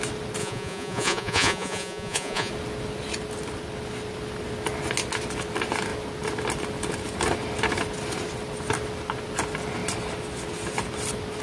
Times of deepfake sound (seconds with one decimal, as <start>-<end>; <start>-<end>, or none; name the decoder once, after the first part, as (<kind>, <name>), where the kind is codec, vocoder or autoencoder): 0.4-2.5 (vocoder, Vocos)